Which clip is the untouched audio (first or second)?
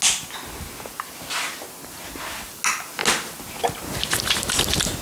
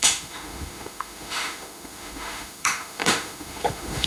first